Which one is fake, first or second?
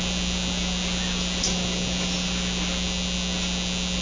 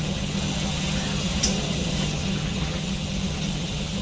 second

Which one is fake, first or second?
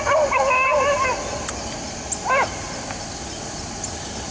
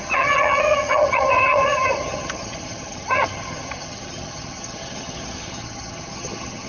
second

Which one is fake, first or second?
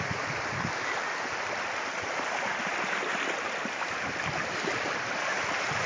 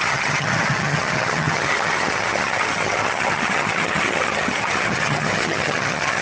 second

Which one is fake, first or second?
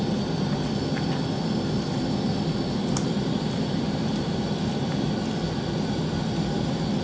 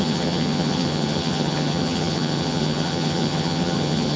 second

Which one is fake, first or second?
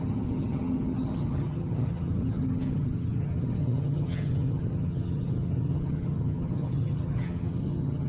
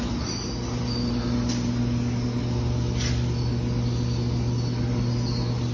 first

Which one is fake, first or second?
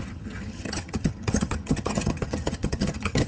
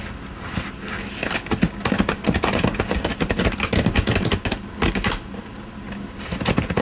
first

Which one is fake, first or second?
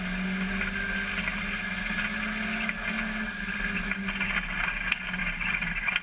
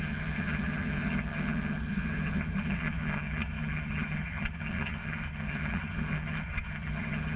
second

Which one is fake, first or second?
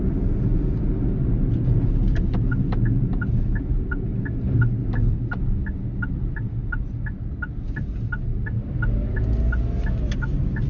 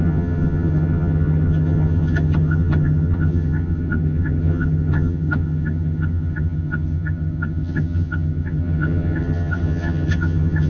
second